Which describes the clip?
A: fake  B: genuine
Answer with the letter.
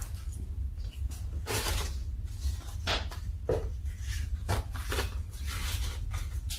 B